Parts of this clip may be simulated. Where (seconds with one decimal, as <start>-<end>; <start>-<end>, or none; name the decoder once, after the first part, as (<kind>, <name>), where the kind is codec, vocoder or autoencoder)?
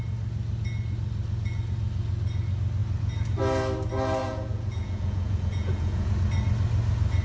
4.2-6.1 (vocoder, Vocos)